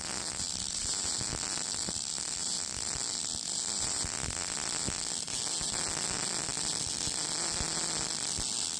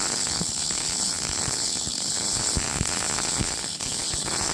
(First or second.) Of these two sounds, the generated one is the second